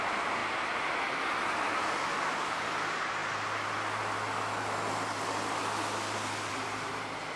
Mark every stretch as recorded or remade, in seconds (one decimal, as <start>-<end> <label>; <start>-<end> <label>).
0.0-0.4 remade; 0.4-2.4 recorded; 2.4-3.2 remade; 3.2-6.5 recorded; 6.5-7.4 remade